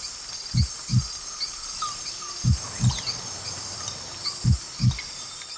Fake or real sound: real